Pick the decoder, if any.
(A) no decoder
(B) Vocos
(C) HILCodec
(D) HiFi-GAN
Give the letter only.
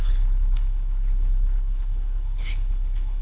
C